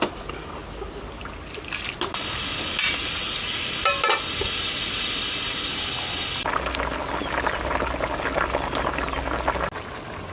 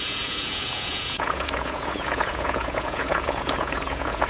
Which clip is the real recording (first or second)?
first